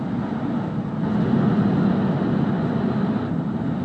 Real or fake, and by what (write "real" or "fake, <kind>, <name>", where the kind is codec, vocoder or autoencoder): real